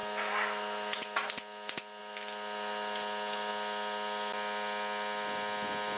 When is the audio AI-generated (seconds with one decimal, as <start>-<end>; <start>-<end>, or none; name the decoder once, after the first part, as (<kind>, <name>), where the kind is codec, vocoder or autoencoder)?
none